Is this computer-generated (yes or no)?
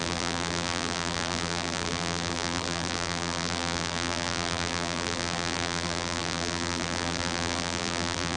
yes